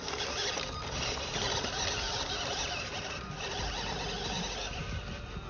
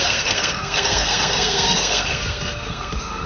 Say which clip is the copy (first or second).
second